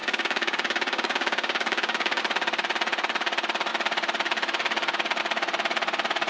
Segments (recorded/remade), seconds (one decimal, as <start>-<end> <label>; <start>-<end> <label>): 0.0-2.2 remade; 2.2-6.3 recorded